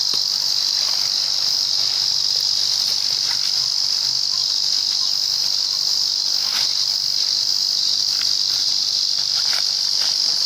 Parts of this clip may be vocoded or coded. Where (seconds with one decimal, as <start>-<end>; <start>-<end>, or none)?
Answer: none